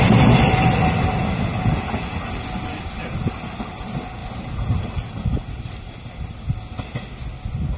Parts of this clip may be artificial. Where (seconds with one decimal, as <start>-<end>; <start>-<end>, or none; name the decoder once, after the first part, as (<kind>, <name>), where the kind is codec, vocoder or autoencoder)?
none

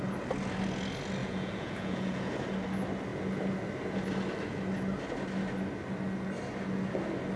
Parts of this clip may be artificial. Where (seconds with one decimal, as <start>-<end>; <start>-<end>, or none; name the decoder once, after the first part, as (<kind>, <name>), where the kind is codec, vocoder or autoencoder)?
1.2-2.3 (vocoder, Vocos)

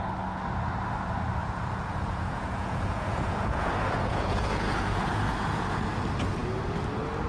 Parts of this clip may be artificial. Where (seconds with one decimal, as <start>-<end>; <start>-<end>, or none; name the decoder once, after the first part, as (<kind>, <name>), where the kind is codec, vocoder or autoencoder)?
1.4-5.8 (vocoder, Vocos)